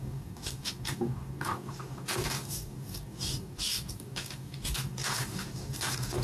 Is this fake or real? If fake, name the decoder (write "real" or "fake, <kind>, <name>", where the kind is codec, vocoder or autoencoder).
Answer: fake, codec, DAC